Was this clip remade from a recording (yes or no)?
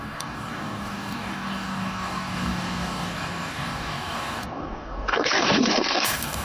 yes